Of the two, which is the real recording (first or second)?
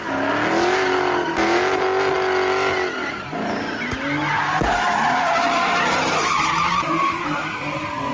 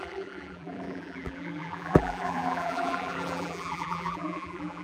first